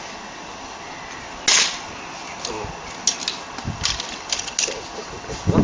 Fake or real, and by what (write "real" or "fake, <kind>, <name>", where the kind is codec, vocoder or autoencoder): real